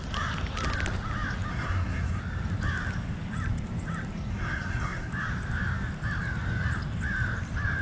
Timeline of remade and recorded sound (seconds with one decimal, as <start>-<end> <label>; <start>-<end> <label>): 0.0-1.5 recorded; 1.5-2.2 remade; 2.2-4.3 recorded; 4.3-5.1 remade; 5.1-7.8 recorded